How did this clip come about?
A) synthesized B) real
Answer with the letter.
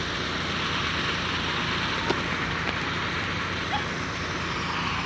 B